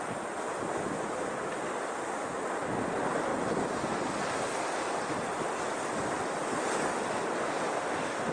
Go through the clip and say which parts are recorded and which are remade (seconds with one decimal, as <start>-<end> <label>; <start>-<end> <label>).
0.0-8.3 recorded